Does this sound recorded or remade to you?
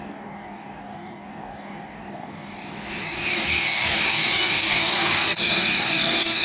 remade